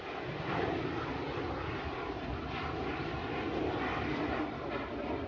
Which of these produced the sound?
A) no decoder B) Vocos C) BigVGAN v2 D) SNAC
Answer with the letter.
A